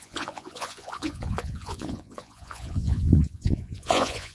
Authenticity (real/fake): fake